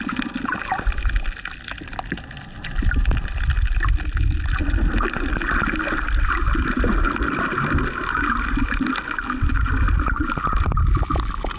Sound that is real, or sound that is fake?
real